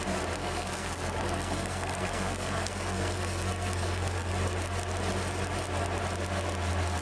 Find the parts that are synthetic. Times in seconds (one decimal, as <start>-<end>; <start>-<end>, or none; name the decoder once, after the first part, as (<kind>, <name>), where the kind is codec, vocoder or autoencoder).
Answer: 0.4-4.3 (codec, SNAC)